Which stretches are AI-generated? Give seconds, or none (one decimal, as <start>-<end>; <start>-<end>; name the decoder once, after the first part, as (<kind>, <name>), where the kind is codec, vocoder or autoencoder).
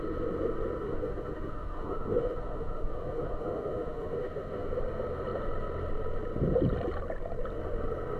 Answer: 0.8-4.7 (autoencoder, DAC-VAE)